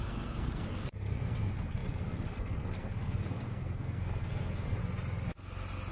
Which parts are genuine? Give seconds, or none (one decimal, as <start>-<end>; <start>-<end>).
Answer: 4.8-5.9